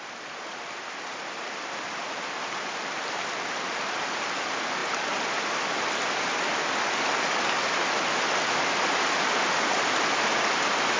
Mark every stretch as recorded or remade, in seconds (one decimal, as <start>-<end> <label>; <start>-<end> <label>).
0.0-11.0 recorded